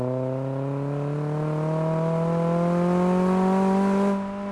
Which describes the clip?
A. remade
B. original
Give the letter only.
B